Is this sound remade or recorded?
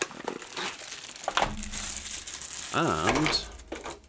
recorded